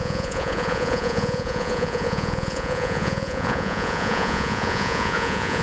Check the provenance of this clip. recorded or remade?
remade